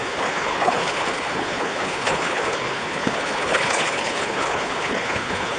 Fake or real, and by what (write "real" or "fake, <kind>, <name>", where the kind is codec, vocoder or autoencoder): fake, codec, HILCodec